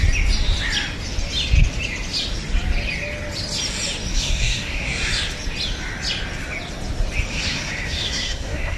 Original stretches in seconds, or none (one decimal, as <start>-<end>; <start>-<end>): 0.0-4.1; 5.1-7.3